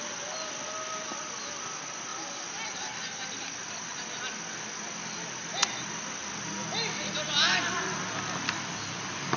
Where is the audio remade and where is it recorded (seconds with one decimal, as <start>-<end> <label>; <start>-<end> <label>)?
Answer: 0.0-9.4 recorded